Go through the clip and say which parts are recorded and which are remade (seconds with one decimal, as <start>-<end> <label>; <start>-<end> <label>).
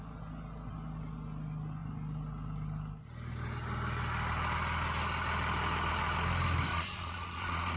0.0-6.7 recorded; 6.7-7.8 remade